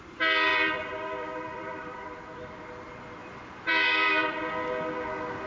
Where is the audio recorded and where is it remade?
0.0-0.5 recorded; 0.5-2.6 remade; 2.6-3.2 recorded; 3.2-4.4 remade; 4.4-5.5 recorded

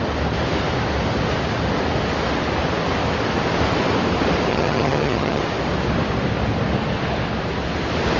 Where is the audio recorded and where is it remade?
0.0-4.5 recorded; 4.5-5.4 remade; 5.4-8.2 recorded